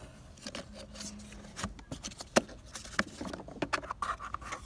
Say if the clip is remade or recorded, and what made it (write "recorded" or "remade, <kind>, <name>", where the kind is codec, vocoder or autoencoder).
recorded